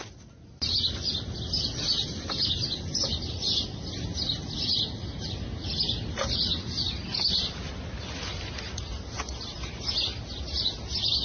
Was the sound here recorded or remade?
recorded